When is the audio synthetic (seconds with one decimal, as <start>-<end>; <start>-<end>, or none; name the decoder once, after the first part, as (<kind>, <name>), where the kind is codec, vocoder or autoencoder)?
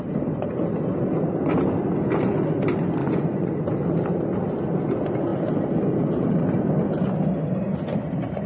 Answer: 3.0-3.6 (vocoder, Vocos)